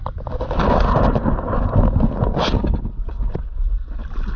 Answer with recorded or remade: recorded